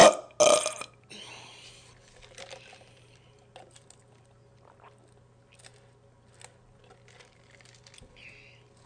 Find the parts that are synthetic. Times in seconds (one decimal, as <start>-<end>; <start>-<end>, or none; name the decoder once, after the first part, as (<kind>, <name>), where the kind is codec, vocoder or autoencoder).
none